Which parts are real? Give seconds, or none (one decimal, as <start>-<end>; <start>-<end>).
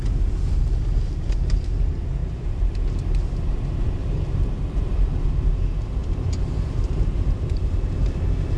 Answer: 0.0-2.2; 2.7-4.0; 5.5-6.0; 7.7-8.6